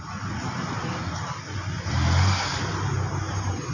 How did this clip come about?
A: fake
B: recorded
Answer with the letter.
B